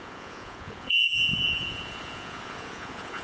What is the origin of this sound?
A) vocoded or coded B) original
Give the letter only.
A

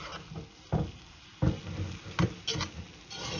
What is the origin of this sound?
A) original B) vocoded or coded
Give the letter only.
A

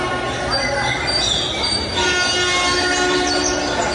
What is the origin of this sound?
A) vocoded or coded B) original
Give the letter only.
B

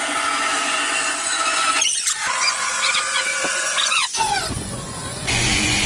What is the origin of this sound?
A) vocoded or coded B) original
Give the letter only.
A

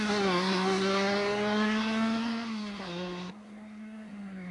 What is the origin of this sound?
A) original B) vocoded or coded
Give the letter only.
B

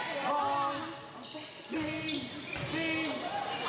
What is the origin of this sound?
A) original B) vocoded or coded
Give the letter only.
A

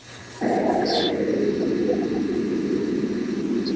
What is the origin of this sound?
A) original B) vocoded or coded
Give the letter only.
A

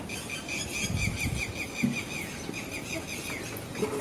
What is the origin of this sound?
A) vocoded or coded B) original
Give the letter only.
B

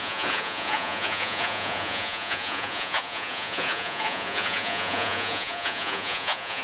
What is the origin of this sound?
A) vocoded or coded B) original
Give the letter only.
A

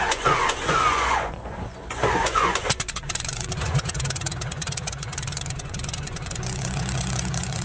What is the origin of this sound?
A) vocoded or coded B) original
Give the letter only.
A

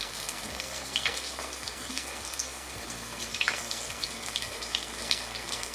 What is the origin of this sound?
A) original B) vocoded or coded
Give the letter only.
B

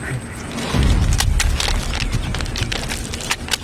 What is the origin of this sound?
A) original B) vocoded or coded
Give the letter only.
A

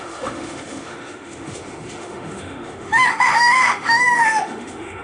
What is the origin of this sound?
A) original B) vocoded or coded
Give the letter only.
B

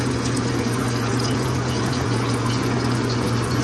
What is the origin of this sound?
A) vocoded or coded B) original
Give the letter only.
A